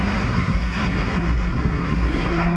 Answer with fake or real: fake